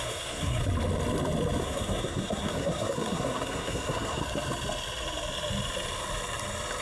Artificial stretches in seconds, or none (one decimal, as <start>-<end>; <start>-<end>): 0.0-0.6; 1.6-4.2